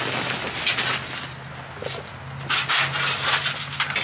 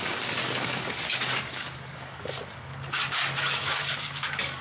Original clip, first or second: first